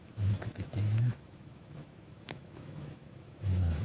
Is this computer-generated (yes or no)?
yes